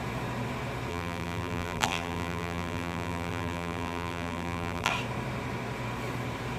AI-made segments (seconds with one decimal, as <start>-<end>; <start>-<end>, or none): 0.9-4.9